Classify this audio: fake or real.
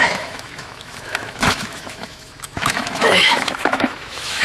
fake